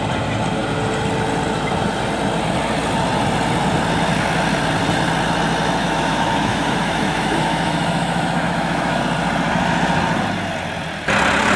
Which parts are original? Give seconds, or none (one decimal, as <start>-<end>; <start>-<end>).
0.0-5.8; 9.0-11.6